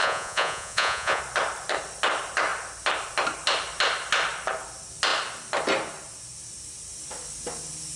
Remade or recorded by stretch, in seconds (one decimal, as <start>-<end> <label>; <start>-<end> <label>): 0.0-1.2 remade; 1.2-8.0 recorded